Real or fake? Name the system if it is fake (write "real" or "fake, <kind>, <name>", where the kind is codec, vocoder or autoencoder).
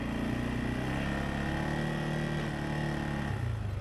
real